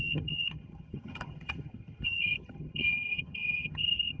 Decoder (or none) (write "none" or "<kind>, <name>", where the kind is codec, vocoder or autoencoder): vocoder, HiFi-GAN